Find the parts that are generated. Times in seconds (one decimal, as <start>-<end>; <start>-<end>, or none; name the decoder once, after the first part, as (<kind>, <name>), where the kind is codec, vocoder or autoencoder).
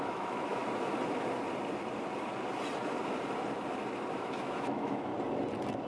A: 0.0-0.6 (autoencoder, DAC-VAE); 4.1-5.1